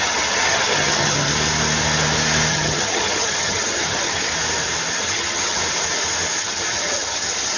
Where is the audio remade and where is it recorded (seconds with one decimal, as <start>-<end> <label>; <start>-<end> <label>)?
0.0-1.3 remade; 1.3-2.5 recorded; 2.5-4.3 remade; 4.3-5.0 recorded; 5.0-5.6 remade; 5.6-6.4 recorded; 6.4-7.6 remade